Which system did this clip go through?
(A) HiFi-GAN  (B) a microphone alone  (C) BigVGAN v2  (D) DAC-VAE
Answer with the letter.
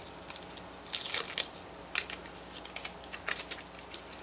B